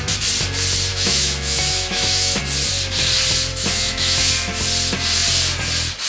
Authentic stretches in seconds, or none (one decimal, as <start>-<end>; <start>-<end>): 0.0-0.9; 2.4-3.5; 4.3-6.1